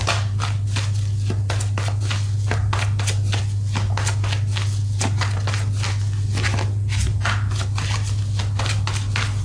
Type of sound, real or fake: real